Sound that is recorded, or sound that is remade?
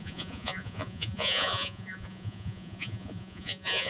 remade